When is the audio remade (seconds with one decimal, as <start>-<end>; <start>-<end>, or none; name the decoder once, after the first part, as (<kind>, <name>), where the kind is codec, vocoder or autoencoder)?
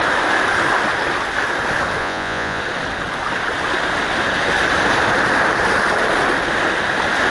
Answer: 2.0-2.6 (vocoder, Vocos)